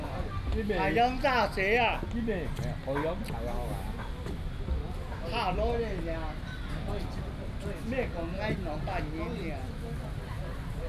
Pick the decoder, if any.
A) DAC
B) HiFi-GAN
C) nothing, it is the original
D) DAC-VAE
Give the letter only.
C